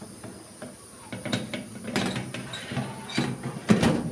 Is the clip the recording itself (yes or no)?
yes